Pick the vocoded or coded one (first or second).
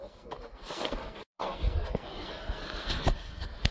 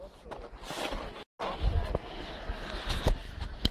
first